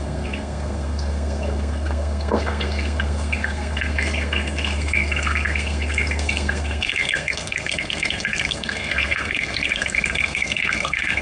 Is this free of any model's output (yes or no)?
no